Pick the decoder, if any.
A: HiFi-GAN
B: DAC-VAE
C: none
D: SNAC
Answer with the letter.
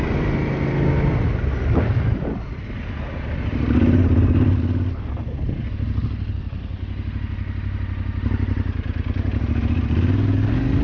C